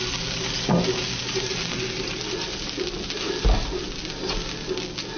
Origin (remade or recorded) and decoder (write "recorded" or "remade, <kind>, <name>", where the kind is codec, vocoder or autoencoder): recorded